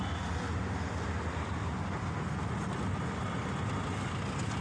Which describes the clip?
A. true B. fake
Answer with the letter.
A